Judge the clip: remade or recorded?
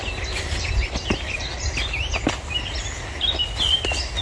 recorded